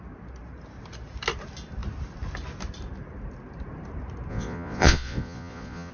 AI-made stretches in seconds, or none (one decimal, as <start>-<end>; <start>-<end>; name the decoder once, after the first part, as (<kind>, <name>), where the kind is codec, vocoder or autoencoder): 4.3-5.9 (vocoder, Vocos)